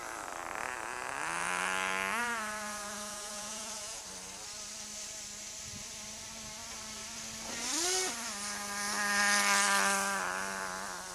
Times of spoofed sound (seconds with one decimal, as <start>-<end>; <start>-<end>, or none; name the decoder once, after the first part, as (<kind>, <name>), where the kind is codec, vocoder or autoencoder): 2.2-4.0 (vocoder, Vocos)